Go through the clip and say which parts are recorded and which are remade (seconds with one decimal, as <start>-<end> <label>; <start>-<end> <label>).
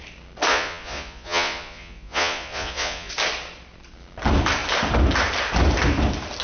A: 0.0-0.5 recorded; 0.5-3.1 remade; 3.1-6.4 recorded